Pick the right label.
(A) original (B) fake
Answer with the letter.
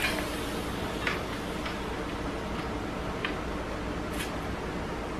A